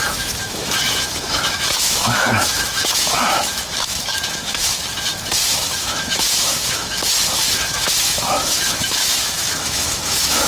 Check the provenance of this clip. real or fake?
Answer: fake